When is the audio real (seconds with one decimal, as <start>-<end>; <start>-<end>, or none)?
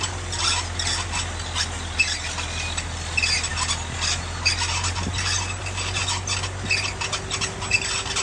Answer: 0.0-8.2